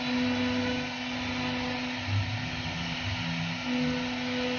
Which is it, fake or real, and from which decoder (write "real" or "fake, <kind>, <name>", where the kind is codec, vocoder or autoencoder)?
real